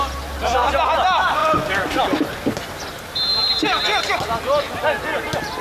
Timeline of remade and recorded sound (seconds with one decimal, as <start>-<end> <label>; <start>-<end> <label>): 0.0-3.3 recorded; 3.3-4.0 remade; 4.0-5.6 recorded